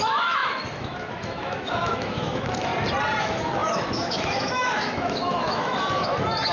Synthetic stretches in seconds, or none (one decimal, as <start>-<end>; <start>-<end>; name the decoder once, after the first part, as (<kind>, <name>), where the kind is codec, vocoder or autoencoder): 0.0-2.7 (autoencoder, DAC-VAE); 3.2-6.5